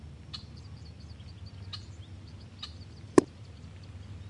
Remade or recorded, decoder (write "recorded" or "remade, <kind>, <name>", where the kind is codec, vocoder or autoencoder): recorded